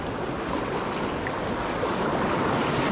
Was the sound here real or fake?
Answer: real